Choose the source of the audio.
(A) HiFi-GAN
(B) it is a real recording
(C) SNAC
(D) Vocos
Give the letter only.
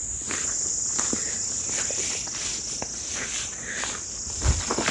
B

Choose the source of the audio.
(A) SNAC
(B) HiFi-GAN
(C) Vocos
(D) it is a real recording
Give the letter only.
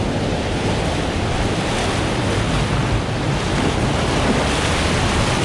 D